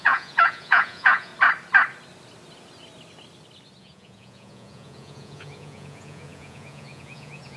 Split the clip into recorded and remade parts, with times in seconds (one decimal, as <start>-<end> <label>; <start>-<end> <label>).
0.0-1.3 remade; 1.3-3.8 recorded; 3.8-7.6 remade